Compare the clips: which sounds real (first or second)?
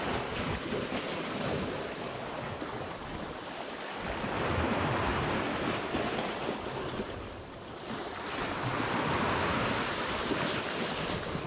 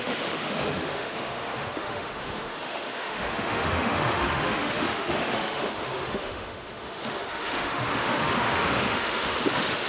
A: first